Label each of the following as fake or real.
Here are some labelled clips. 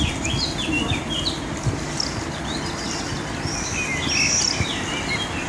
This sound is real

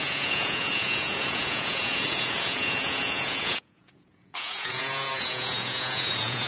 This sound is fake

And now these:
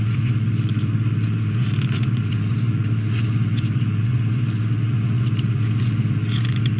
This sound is fake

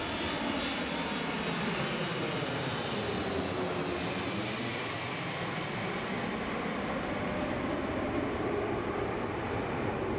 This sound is real